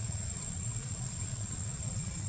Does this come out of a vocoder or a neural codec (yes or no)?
yes